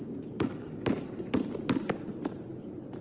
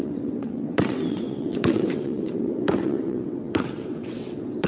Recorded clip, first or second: first